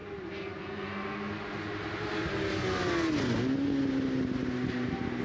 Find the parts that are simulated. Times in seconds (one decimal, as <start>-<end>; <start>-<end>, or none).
none